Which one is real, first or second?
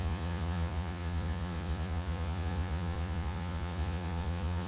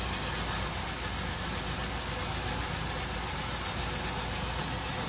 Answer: second